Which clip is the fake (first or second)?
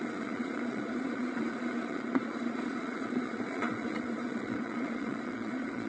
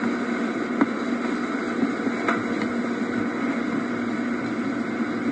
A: first